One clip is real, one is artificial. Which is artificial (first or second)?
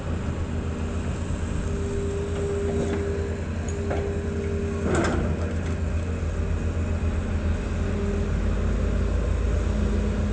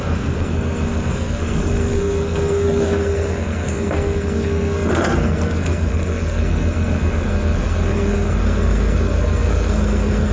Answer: second